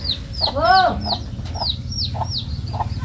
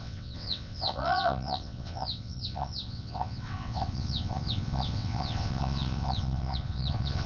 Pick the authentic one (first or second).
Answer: first